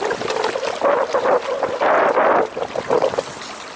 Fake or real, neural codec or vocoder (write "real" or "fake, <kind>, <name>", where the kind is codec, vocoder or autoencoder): real